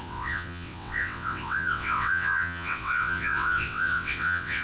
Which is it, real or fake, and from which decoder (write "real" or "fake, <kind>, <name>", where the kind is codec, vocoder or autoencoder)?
fake, vocoder, WaveNeXt